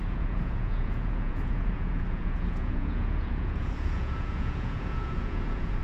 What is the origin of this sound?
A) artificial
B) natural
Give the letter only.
A